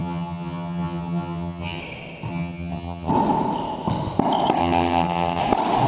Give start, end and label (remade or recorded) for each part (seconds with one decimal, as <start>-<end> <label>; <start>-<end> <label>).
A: 0.0-1.8 remade; 1.8-2.3 recorded; 2.3-3.1 remade; 3.1-4.6 recorded; 4.6-5.4 remade; 5.4-5.9 recorded